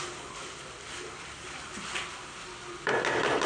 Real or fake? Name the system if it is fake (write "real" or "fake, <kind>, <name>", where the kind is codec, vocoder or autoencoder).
real